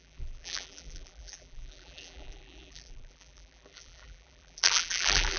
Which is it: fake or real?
fake